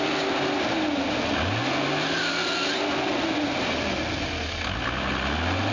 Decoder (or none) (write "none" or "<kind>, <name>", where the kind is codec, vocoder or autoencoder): none